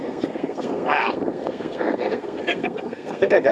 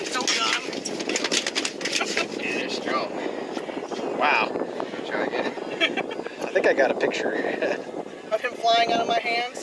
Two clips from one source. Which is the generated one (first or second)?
first